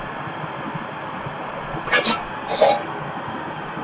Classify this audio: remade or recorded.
recorded